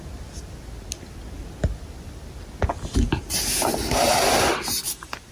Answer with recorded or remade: recorded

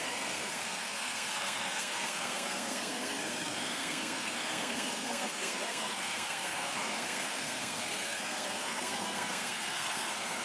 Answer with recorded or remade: remade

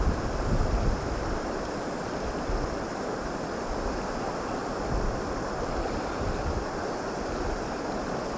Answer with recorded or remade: recorded